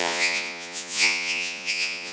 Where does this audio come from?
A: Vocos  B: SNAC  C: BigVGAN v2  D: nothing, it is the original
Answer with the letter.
A